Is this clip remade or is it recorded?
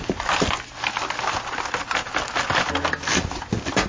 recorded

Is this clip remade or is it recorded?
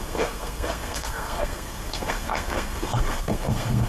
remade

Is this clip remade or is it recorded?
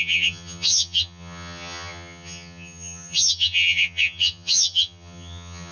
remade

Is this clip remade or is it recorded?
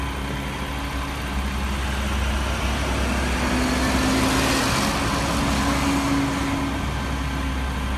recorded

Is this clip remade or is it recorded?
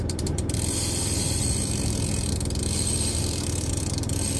remade